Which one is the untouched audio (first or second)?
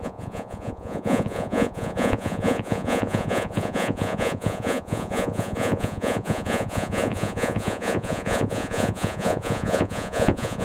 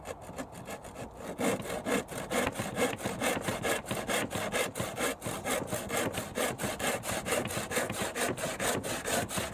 second